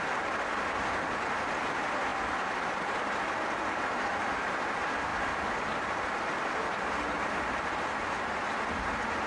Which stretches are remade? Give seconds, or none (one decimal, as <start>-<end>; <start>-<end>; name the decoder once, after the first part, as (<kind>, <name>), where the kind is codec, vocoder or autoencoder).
none